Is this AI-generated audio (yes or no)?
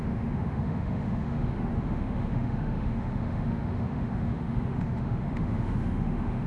yes